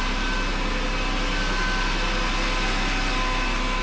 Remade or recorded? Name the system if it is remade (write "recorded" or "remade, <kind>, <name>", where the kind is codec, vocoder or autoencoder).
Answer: recorded